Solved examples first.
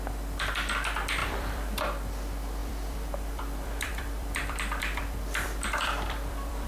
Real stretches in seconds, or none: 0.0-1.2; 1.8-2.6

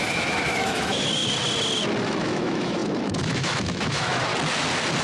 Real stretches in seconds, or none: 1.2-2.0; 4.3-5.0

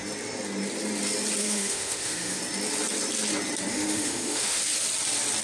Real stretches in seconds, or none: 0.0-1.4; 2.4-3.7; 4.6-5.4

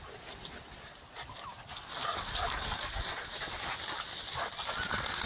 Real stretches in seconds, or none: 0.0-5.3

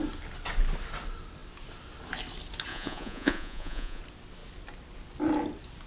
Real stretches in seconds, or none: 0.0-2.7; 4.0-5.9

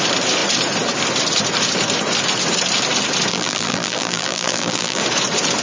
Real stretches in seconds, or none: 0.0-3.3; 5.0-5.6

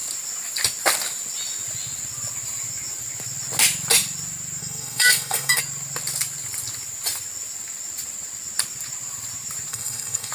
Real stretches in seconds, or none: 0.0-4.6; 5.6-9.7

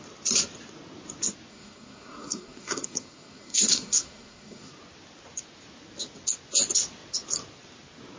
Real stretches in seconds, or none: 0.0-1.5; 4.7-8.2